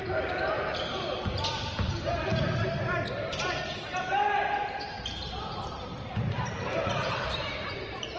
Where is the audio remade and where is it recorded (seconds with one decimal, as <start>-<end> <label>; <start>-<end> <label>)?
0.0-8.2 remade